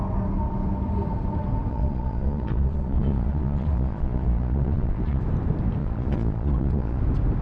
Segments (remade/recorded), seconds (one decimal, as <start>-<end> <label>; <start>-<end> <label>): 0.0-1.7 recorded; 1.7-5.2 remade; 5.2-5.8 recorded; 5.8-7.0 remade; 7.0-7.4 recorded